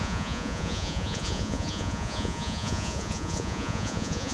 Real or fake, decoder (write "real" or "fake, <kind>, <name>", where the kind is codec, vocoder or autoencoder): fake, vocoder, Vocos